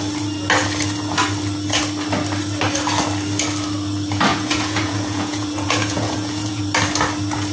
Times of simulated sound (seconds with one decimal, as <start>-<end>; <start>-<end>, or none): 4.3-6.6

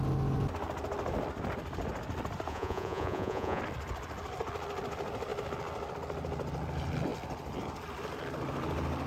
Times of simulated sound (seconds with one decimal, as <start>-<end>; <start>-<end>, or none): 2.5-3.6

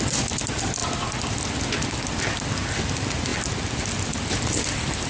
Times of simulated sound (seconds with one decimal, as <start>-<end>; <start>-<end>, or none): none

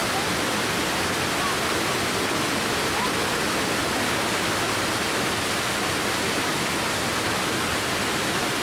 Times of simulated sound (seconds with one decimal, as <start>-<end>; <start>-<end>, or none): none

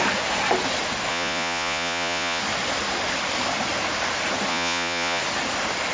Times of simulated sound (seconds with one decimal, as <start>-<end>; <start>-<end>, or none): 1.1-2.4; 4.5-5.2

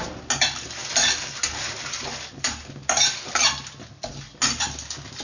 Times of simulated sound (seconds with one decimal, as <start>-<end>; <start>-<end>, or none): none

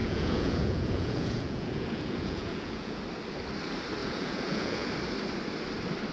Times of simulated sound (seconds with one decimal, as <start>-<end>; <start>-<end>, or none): 0.0-3.0; 4.0-4.9

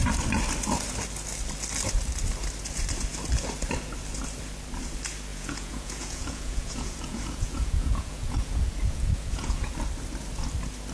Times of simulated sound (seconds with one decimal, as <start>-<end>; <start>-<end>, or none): 5.3-9.7